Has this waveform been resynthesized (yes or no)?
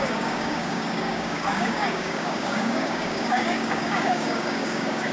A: yes